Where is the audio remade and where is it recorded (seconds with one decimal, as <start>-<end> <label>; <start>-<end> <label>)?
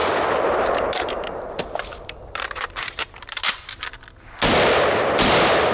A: 0.0-3.4 remade; 3.4-5.7 recorded